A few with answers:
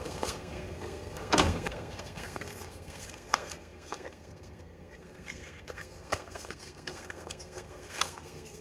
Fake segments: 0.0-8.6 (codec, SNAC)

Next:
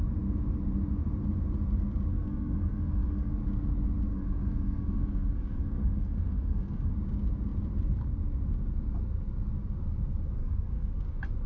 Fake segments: 2.1-3.3 (codec, SNAC); 4.1-6.9; 10.4-10.9